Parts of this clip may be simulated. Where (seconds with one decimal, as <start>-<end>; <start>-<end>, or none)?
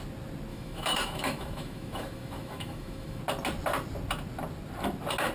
0.5-3.2